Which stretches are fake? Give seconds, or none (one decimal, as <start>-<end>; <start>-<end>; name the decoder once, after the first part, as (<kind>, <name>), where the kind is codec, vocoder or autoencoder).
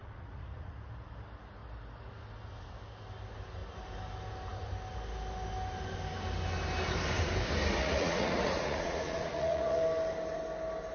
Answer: 0.0-0.7 (vocoder, Vocos); 7.8-9.8